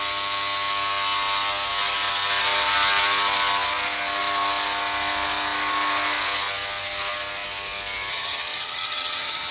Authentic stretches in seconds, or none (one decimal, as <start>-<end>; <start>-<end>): 0.0-8.1